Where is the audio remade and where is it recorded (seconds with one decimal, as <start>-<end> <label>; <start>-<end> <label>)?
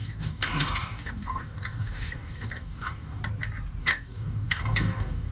0.0-3.2 remade; 3.2-3.8 recorded; 3.8-5.3 remade